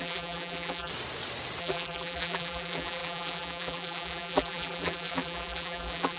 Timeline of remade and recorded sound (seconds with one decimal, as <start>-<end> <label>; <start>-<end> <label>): 0.0-0.9 remade; 0.9-1.6 recorded; 1.6-6.2 remade